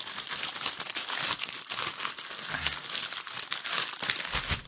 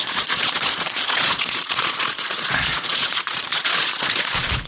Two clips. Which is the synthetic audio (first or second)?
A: second